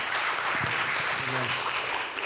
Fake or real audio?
real